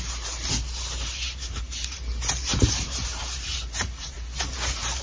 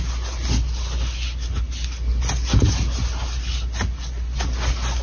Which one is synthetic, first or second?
first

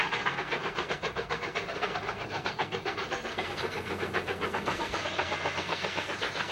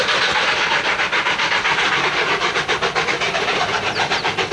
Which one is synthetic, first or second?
first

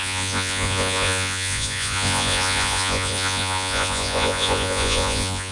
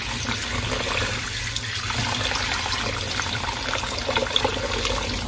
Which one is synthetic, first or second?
first